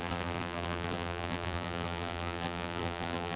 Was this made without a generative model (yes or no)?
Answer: no